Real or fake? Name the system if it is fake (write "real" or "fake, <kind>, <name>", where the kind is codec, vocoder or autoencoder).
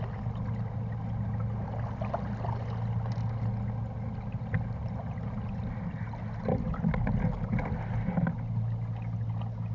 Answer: real